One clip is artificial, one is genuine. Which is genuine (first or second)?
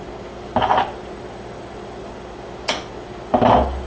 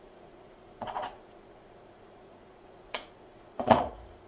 first